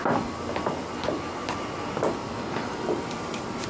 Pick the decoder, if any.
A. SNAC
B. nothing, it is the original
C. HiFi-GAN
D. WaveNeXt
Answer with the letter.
B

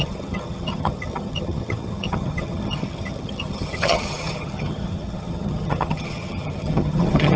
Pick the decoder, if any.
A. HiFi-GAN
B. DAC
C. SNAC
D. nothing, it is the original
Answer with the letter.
A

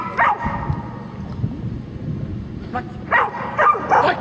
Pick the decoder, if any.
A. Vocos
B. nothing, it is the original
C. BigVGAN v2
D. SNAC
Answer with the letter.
B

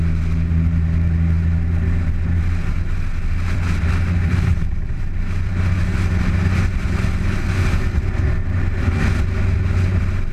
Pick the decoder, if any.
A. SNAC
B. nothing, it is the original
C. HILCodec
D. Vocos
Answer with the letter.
B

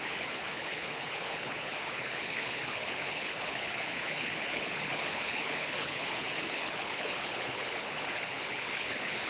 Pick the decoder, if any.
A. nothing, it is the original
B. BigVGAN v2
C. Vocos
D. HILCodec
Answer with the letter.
D